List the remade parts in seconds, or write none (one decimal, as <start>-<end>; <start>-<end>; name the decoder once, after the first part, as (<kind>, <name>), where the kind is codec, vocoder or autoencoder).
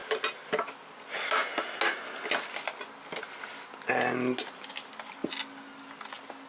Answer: none